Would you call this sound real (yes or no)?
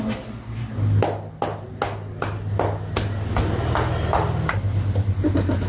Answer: yes